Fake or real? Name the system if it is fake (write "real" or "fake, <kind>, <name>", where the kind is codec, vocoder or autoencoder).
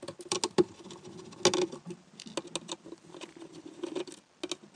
real